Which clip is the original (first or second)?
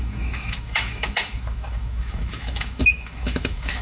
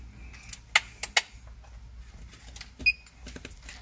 second